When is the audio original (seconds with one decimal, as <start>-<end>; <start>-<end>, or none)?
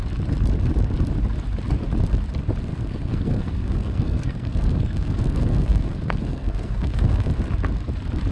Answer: 0.0-2.7; 7.4-8.3